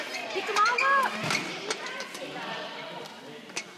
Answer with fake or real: real